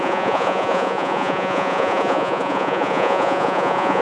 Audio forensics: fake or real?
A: fake